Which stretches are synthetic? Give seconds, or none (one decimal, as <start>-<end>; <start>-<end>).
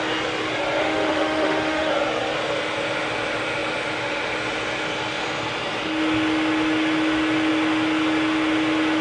0.8-1.9